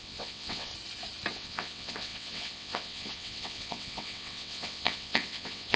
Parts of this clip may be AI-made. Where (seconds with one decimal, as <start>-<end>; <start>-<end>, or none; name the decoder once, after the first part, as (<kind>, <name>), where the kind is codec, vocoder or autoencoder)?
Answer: 0.0-0.7 (vocoder, WaveNeXt); 1.3-5.8